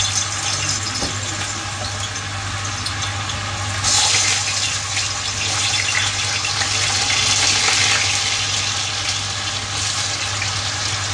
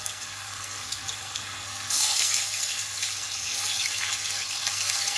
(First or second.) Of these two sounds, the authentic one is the first